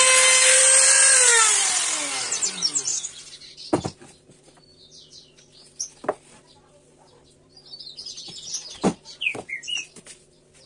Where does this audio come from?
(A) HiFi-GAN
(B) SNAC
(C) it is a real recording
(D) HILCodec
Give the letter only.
C